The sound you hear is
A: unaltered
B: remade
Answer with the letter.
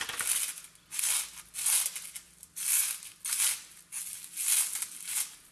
A